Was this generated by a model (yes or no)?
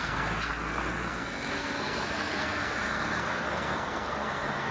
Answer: yes